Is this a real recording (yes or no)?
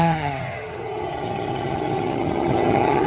no